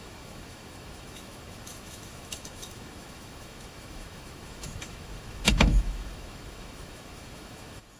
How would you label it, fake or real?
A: fake